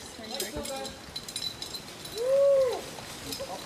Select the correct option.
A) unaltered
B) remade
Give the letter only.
A